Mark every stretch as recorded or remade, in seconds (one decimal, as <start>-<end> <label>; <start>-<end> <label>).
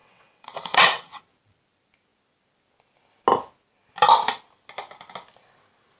0.0-1.2 remade; 1.2-6.0 recorded